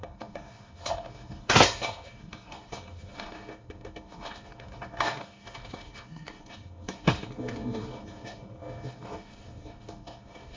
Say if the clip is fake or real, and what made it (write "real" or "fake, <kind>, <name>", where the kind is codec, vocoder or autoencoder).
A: fake, codec, SNAC